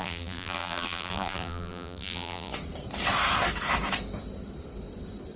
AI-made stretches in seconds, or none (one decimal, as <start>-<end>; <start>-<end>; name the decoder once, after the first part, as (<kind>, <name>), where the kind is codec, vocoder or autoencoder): 0.0-2.5 (vocoder, BigVGAN v2)